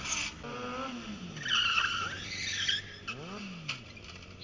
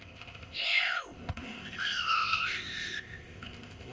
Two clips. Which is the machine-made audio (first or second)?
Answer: second